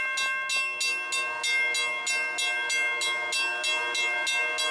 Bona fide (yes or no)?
yes